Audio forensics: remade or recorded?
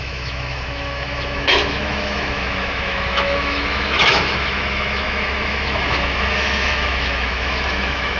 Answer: remade